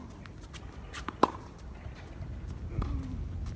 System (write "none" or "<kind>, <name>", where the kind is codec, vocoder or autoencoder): none